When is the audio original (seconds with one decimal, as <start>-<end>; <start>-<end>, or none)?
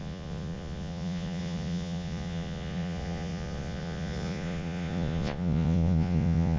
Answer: none